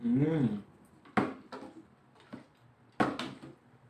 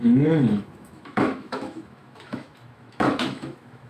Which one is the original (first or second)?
first